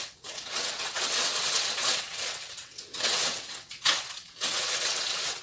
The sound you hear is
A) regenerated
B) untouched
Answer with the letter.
A